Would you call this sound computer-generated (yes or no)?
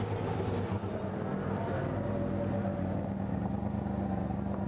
no